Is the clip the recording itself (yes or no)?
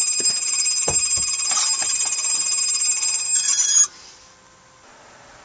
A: yes